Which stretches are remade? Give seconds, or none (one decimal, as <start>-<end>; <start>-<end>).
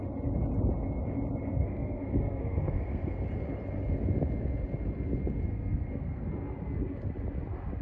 1.5-3.1; 5.5-6.3